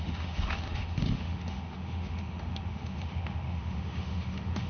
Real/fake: fake